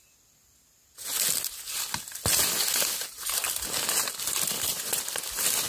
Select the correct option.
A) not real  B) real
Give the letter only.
B